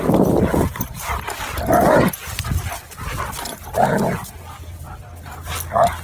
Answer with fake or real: real